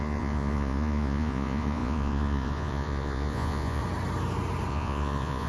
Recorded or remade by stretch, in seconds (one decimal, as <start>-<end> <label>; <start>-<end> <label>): 0.0-3.8 remade; 3.8-4.7 recorded; 4.7-5.5 remade